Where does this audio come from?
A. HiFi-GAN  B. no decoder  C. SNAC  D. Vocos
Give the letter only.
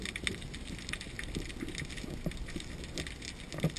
B